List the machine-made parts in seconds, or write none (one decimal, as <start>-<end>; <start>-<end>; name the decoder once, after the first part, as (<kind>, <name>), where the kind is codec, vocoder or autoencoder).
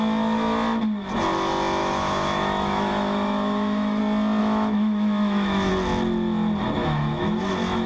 1.8-4.0 (autoencoder, DAC-VAE); 4.4-5.7; 6.8-7.5